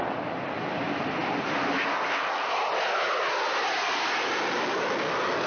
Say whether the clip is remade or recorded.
recorded